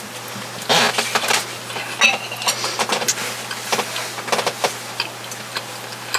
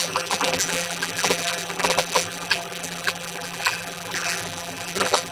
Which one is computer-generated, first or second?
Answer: second